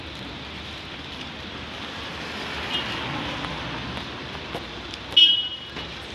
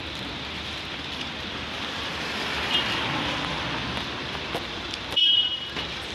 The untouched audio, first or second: first